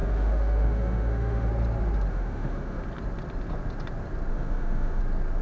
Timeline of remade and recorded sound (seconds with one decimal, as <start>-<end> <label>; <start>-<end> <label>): 0.0-1.5 remade; 1.5-2.1 recorded; 2.1-2.8 remade; 2.8-4.3 recorded; 4.3-5.0 remade; 5.0-5.4 recorded